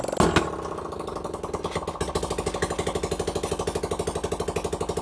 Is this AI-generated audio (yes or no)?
no